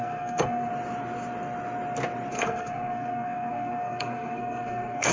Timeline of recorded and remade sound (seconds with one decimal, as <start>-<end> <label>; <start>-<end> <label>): 0.0-0.7 remade; 0.7-2.3 recorded; 2.3-5.1 remade